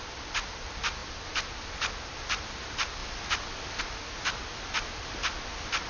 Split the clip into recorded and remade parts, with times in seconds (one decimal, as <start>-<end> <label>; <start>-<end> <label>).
0.0-5.9 recorded

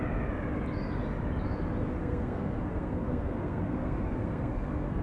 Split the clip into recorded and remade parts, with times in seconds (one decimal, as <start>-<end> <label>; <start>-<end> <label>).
0.0-2.0 recorded; 2.0-5.0 remade

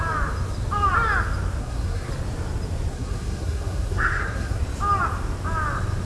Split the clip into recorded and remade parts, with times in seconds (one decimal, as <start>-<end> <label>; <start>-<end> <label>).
0.0-1.6 recorded; 1.6-2.1 remade; 2.1-2.9 recorded; 2.9-4.6 remade; 4.6-6.0 recorded

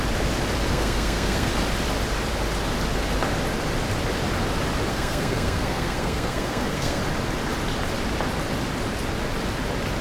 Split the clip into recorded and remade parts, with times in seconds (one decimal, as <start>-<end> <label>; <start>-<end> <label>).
0.0-0.7 recorded; 0.7-1.5 remade; 1.5-4.9 recorded; 4.9-7.0 remade; 7.0-10.0 recorded

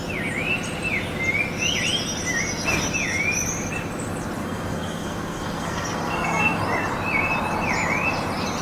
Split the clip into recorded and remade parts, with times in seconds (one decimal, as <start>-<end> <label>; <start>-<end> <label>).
0.0-4.4 recorded; 4.4-6.6 remade; 6.6-8.6 recorded

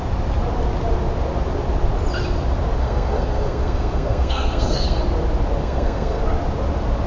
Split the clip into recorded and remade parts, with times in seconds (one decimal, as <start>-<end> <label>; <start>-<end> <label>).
0.0-2.8 recorded; 2.8-5.0 remade; 5.0-5.6 recorded; 5.6-6.2 remade; 6.2-7.1 recorded

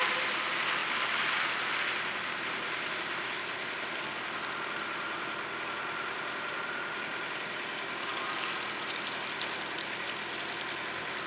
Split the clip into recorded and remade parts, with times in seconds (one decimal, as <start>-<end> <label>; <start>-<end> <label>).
0.0-11.3 recorded